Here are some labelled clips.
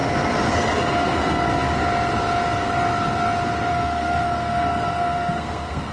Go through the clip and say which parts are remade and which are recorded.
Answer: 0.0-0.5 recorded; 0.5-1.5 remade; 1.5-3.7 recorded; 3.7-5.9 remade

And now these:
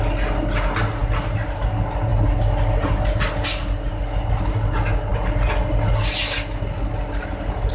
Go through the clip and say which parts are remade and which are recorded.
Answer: 0.0-7.7 recorded

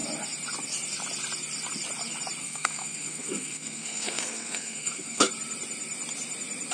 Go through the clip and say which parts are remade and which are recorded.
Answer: 0.0-2.4 recorded; 2.4-5.3 remade; 5.3-6.7 recorded

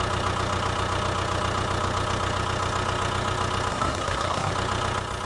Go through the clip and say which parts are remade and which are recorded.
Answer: 0.0-3.7 recorded; 3.7-4.5 remade; 4.5-5.3 recorded

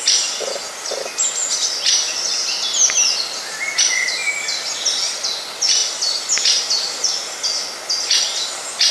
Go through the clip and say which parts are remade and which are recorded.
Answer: 0.0-8.9 recorded

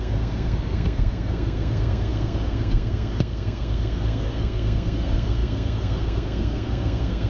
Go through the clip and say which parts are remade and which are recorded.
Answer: 0.0-7.3 remade